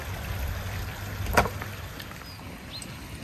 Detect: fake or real real